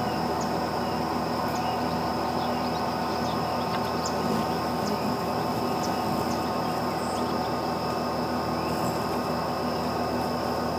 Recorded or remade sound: recorded